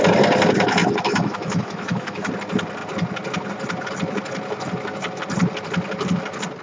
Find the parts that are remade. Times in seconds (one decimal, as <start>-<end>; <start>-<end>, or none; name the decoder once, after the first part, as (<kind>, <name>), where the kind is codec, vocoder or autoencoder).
0.8-2.3 (autoencoder, DAC-VAE)